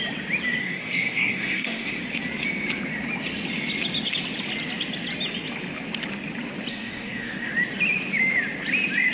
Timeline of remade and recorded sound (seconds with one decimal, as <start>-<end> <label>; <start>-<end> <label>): 0.0-0.6 recorded; 0.6-2.0 remade; 2.0-6.7 recorded; 6.7-7.5 remade; 7.5-9.1 recorded